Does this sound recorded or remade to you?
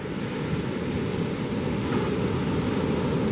recorded